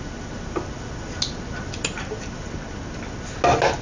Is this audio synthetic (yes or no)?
no